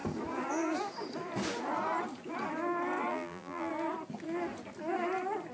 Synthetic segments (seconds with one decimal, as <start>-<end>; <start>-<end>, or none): 3.1-3.7